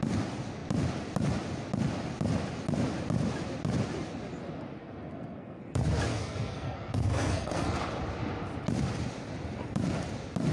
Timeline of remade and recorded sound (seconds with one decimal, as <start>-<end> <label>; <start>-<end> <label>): 0.0-4.8 recorded; 4.8-5.6 remade; 5.6-6.1 recorded; 6.1-7.8 remade; 7.8-10.5 recorded